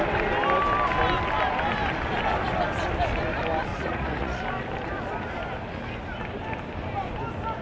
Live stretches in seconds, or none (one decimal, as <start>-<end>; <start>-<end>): 0.0-3.7; 4.4-7.6